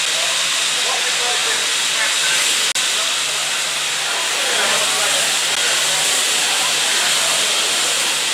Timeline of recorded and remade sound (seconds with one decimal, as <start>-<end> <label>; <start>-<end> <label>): 0.0-8.3 recorded